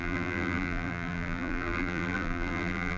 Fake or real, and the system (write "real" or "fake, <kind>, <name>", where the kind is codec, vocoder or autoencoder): fake, vocoder, BigVGAN v2